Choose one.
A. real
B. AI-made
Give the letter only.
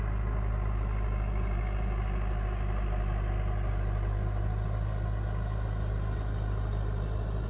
A